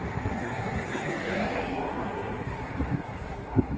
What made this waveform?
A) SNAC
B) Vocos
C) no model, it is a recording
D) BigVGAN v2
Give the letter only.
A